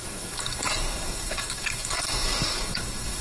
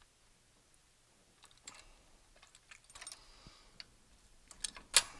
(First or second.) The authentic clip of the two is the second